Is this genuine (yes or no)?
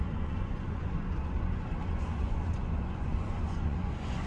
no